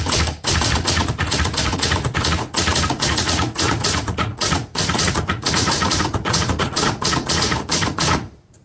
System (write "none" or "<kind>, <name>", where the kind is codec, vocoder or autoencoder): vocoder, Vocos